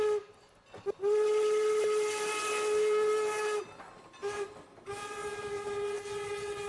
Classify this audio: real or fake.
real